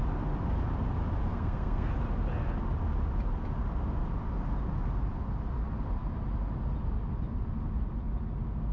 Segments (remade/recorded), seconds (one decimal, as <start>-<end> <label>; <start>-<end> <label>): 0.0-1.3 recorded; 1.3-1.9 remade; 1.9-8.7 recorded